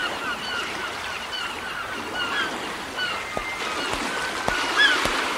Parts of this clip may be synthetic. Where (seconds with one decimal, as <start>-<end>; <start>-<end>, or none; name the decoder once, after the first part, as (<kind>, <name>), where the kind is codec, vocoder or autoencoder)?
0.0-2.7 (vocoder, BigVGAN v2)